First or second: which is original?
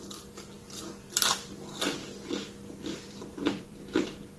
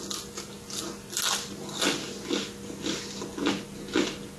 second